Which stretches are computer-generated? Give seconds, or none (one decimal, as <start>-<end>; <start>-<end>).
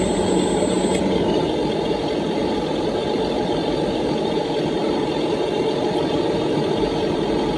none